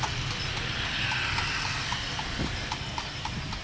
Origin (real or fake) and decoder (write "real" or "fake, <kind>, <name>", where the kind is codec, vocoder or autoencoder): real